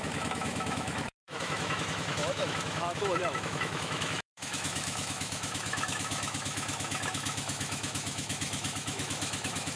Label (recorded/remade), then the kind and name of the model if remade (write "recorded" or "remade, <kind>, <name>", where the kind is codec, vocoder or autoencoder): remade, autoencoder, DAC-VAE